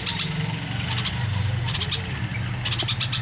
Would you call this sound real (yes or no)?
yes